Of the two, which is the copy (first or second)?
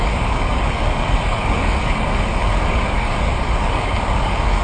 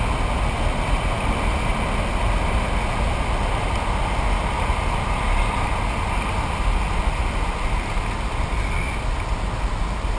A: first